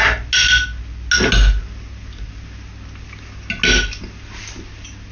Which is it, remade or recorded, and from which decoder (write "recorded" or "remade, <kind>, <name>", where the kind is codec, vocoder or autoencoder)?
recorded